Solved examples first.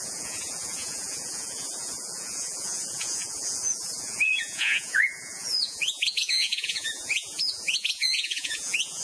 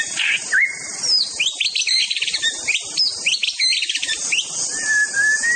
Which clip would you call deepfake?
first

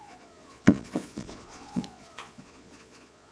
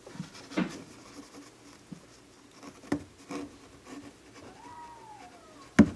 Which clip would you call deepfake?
first